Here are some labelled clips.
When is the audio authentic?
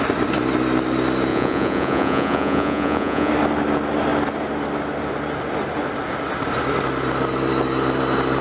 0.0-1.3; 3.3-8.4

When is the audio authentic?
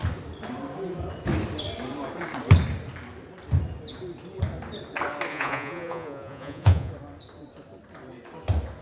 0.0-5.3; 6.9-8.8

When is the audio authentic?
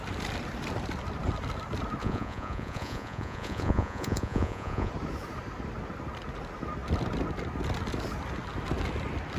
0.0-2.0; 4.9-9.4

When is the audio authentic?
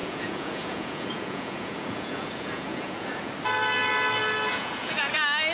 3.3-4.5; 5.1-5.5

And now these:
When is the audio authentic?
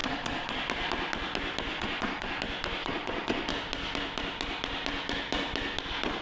0.7-1.7; 2.3-2.8; 3.5-6.2